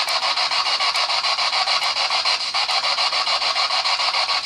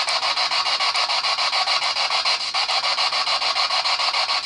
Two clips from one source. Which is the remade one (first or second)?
first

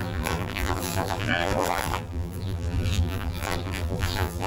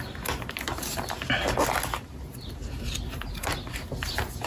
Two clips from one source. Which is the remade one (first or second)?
first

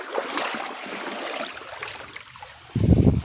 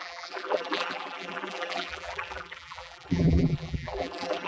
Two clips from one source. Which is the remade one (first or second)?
second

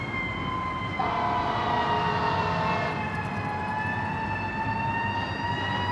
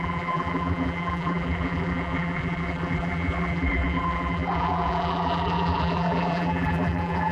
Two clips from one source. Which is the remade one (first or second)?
second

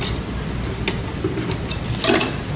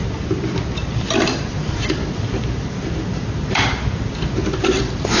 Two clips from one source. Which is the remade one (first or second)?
second